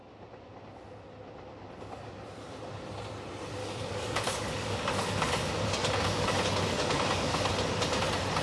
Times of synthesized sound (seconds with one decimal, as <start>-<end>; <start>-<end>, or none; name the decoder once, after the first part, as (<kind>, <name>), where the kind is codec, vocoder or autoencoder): 3.6-7.5 (codec, DAC)